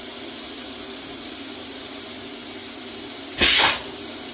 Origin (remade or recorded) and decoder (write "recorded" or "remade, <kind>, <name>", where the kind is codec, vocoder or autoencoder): remade, vocoder, BigVGAN v2